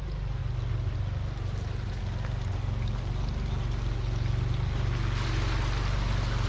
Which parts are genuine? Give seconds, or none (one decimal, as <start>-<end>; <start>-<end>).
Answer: 0.0-6.5